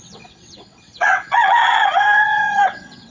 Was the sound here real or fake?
fake